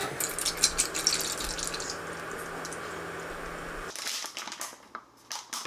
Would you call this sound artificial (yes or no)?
no